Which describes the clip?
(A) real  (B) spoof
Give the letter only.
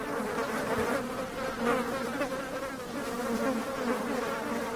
A